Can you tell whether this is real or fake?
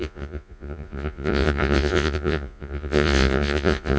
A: fake